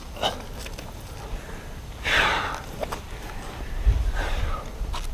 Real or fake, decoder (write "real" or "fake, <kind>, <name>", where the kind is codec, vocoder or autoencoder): real